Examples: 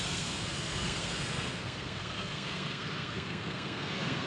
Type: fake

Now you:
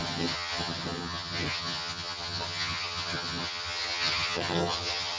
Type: fake